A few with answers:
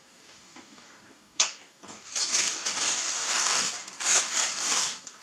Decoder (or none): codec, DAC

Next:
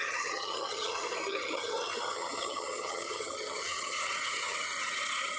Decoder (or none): vocoder, HiFi-GAN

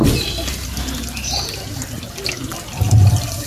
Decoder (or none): none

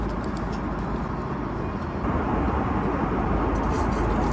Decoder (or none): none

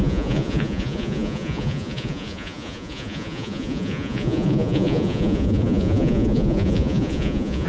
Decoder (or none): vocoder, Vocos